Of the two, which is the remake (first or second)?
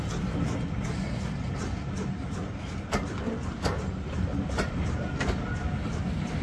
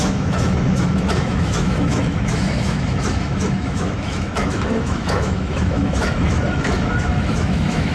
second